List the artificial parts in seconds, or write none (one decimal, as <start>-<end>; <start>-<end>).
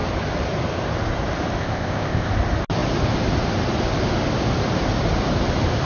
1.6-2.3